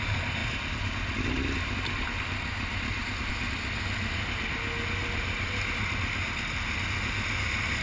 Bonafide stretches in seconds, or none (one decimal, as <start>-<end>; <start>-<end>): 0.0-7.8